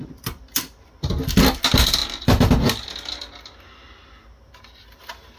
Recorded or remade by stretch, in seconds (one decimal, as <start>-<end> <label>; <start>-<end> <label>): 0.0-5.4 recorded